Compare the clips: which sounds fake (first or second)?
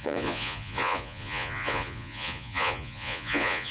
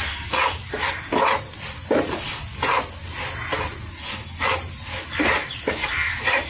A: first